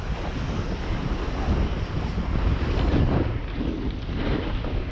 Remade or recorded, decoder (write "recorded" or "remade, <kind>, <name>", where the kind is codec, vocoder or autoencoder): recorded